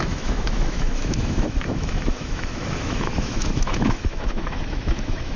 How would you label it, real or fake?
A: fake